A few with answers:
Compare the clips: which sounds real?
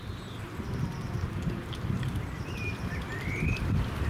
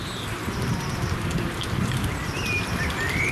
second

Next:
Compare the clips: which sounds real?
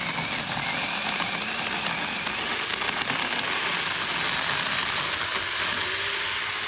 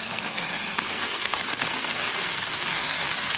first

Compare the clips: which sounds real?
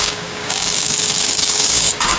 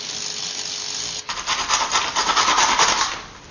second